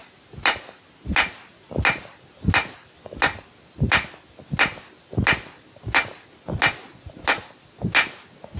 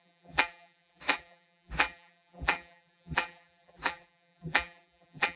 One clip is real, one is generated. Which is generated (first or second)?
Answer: second